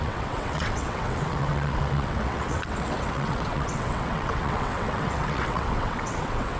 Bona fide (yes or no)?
no